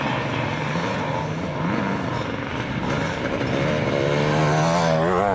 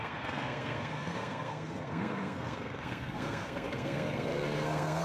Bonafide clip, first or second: first